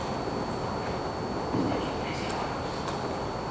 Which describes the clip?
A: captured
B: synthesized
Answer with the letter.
A